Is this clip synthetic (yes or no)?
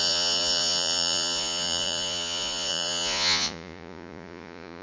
yes